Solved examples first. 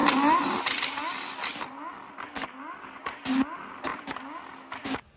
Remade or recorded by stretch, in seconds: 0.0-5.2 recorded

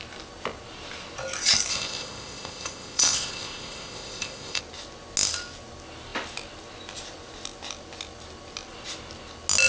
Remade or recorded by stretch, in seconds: 0.0-1.7 recorded; 1.7-4.6 remade; 4.6-9.7 recorded

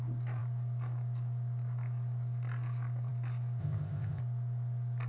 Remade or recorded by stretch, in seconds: 0.0-3.6 recorded; 3.6-4.2 remade; 4.2-5.1 recorded

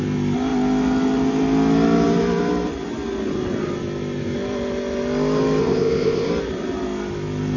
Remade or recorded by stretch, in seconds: 0.0-5.6 recorded; 5.6-6.3 remade; 6.3-7.6 recorded

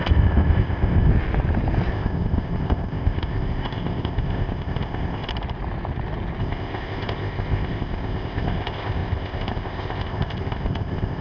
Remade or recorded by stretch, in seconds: 0.0-1.1 remade; 1.1-1.9 recorded; 1.9-5.3 remade; 5.3-6.4 recorded; 6.4-11.2 remade

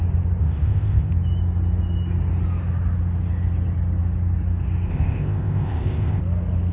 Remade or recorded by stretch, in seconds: 0.0-0.4 recorded; 0.4-1.1 remade; 1.1-4.9 recorded; 4.9-6.2 remade; 6.2-6.7 recorded

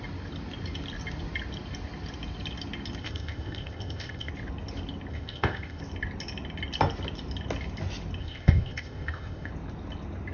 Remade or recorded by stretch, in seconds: 0.0-3.0 recorded; 3.0-4.3 remade; 4.3-5.1 recorded; 5.1-5.8 remade; 5.8-8.2 recorded; 8.2-9.5 remade; 9.5-10.3 recorded